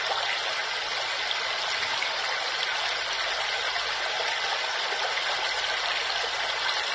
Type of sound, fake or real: real